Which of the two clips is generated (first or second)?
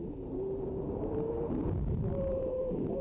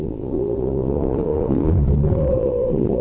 second